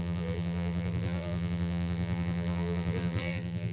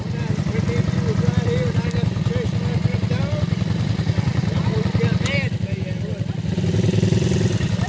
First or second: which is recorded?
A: second